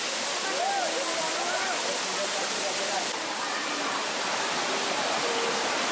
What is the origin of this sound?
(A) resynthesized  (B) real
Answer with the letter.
B